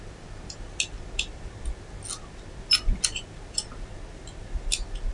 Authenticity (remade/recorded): recorded